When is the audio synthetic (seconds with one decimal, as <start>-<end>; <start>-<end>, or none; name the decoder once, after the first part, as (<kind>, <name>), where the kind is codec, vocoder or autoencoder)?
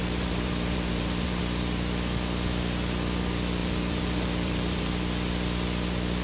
0.0-1.4 (vocoder, BigVGAN v2); 3.6-4.9